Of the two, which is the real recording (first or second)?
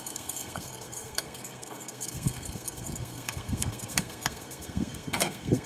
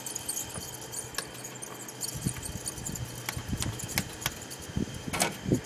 second